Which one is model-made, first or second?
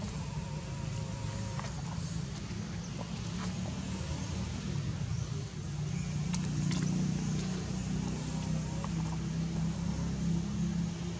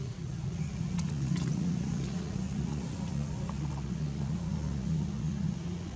second